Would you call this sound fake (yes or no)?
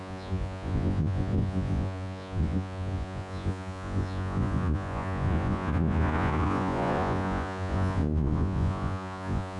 yes